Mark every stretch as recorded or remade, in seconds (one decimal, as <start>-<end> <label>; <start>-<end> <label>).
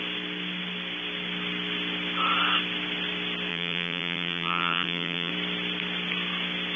0.0-3.5 recorded; 3.5-5.3 remade; 5.3-6.8 recorded